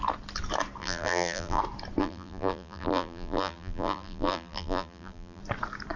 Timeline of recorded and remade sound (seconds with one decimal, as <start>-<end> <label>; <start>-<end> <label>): 0.0-0.8 recorded; 0.8-1.6 remade; 1.6-2.0 recorded; 2.0-5.4 remade; 5.4-6.0 recorded